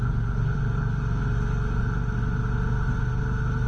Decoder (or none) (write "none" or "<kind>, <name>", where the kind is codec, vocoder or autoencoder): none